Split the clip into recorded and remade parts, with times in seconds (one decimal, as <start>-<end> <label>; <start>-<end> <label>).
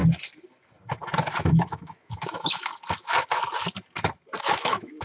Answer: 0.0-1.4 recorded; 1.4-2.7 remade; 2.7-4.4 recorded; 4.4-5.0 remade